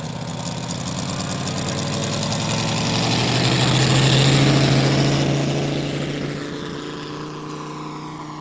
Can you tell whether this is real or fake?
real